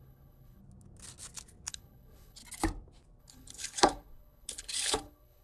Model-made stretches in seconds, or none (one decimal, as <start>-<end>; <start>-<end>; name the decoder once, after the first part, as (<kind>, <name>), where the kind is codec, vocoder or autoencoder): 0.0-0.6 (codec, HILCodec); 1.7-2.4; 3.2-5.4